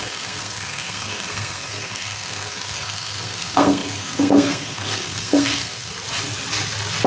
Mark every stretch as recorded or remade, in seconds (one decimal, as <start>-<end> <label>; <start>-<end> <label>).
0.0-5.9 remade; 5.9-7.1 recorded